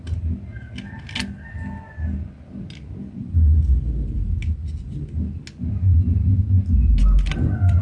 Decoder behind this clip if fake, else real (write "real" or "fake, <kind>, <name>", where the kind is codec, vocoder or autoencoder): real